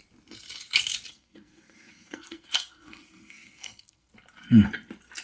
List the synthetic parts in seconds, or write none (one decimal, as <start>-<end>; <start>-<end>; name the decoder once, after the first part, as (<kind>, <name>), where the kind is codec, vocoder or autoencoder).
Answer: 1.1-4.1 (codec, SNAC)